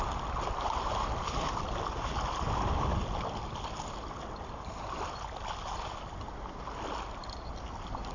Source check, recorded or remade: recorded